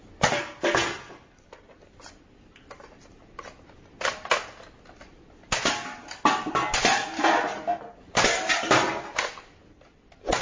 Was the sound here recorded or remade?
recorded